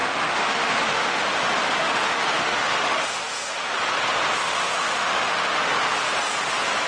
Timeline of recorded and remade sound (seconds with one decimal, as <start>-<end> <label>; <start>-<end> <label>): 0.0-1.2 remade; 1.2-1.9 recorded; 1.9-3.7 remade; 3.7-4.4 recorded; 4.4-5.7 remade; 5.7-6.9 recorded